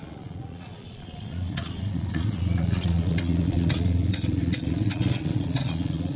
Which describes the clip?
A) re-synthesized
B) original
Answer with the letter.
A